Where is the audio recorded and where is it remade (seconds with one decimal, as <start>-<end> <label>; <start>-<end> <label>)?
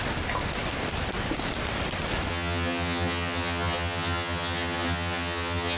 0.0-2.3 recorded; 2.3-5.8 remade